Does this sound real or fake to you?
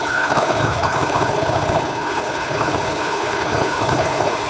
fake